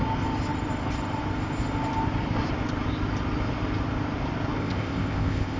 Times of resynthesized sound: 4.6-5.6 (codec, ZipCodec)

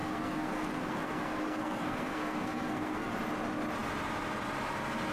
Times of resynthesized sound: 0.0-3.1 (codec, SNAC)

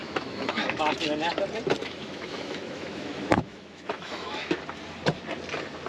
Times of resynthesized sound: 0.0-0.8 (autoencoder, DAC-VAE); 1.8-4.6

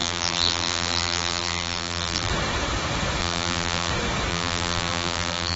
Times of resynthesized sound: 0.0-2.3 (vocoder, BigVGAN v2); 3.2-3.9; 4.3-5.6

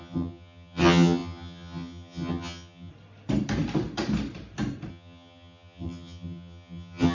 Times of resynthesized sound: 0.0-2.9 (vocoder, HiFi-GAN); 4.9-7.1